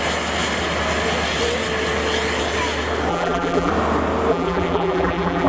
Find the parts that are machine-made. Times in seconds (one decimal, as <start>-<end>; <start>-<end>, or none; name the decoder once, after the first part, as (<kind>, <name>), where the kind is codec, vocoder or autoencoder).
3.1-3.7 (vocoder, BigVGAN v2); 4.3-5.5